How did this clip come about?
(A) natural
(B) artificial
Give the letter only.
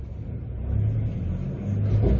A